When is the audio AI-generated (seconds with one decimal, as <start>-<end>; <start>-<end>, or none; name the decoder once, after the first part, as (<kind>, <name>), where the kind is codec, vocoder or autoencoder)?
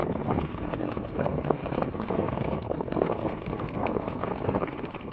0.0-5.1 (codec, SNAC)